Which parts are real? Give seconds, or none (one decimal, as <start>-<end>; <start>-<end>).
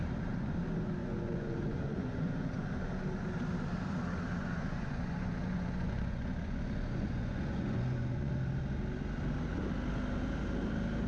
0.0-1.0; 2.7-4.4; 8.3-11.1